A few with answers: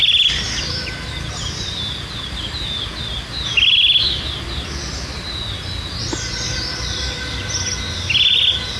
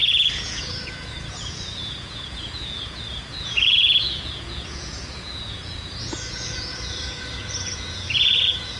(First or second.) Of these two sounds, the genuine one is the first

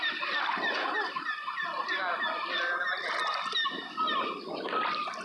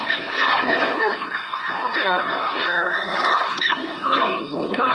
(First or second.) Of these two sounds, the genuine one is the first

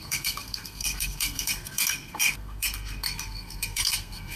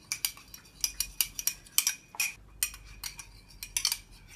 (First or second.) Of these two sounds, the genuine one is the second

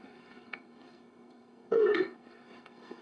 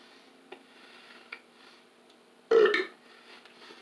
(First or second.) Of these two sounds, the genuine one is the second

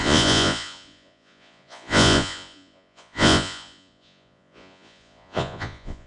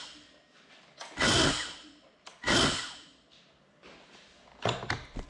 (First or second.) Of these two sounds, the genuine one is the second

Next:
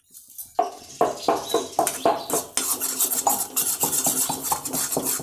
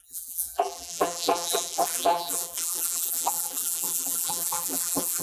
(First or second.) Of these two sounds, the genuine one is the first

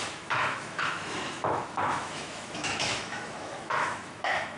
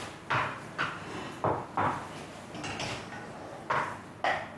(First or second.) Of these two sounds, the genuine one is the second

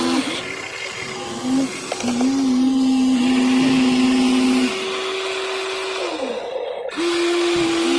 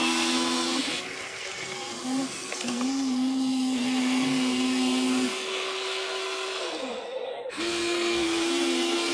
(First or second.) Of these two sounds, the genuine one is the first